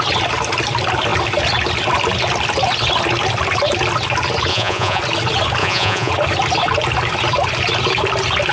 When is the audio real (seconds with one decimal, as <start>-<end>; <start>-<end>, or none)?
0.0-4.5; 5.0-5.6; 6.1-8.5

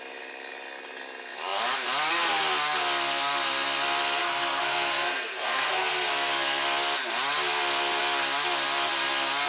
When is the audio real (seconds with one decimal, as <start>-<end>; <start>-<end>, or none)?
0.0-4.2; 6.1-9.5

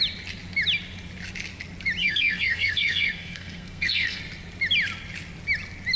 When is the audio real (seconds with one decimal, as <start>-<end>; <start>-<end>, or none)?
0.0-2.0; 4.2-6.0

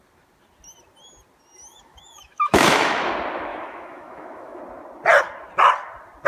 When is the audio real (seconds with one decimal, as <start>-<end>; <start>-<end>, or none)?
0.0-1.7; 3.1-3.5; 4.6-6.3

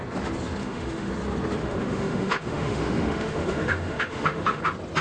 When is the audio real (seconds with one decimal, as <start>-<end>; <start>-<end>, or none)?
0.0-0.6; 1.1-1.6; 4.6-5.0

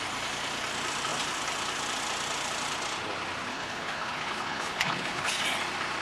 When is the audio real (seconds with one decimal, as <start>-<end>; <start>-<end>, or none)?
0.0-3.5; 5.3-6.0

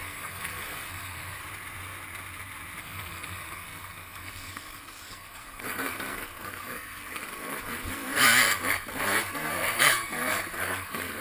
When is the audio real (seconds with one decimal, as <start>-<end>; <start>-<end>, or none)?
1.4-2.8